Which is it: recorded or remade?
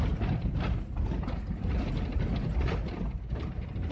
recorded